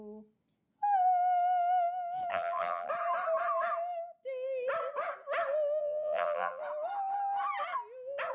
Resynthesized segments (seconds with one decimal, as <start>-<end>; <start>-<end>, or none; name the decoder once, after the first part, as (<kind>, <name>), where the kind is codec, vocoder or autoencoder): 2.3-2.9 (vocoder, BigVGAN v2); 5.8-6.6